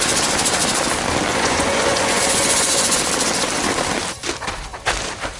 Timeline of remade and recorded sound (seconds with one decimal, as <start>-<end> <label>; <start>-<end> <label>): 0.0-1.3 recorded; 1.3-3.0 remade; 3.0-5.4 recorded